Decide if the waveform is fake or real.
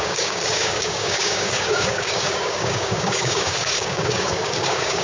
fake